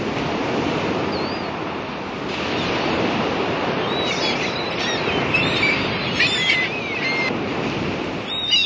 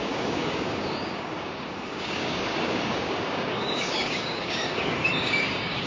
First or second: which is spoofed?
second